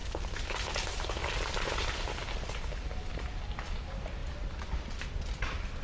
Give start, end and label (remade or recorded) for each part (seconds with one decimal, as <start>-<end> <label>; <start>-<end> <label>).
0.0-5.8 recorded